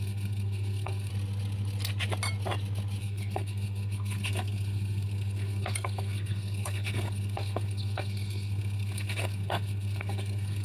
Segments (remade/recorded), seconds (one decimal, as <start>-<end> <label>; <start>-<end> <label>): 0.0-1.1 remade; 1.1-3.0 recorded; 3.0-10.6 remade